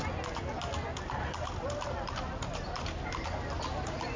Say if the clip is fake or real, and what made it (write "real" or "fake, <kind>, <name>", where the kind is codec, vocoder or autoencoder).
real